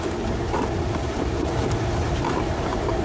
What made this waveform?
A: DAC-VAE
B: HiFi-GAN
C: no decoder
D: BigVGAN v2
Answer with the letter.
D